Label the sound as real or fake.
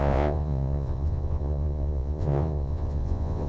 fake